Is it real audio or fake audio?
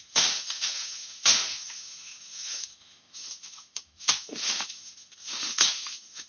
fake